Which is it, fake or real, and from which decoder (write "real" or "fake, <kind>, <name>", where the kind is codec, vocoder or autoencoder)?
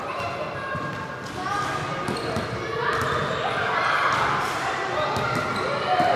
real